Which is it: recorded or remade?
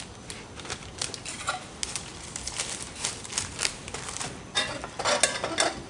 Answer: recorded